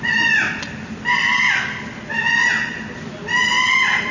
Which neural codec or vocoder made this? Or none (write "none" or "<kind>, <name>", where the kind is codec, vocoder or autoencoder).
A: none